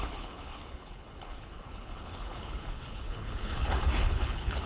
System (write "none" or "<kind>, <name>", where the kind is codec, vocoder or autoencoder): codec, HILCodec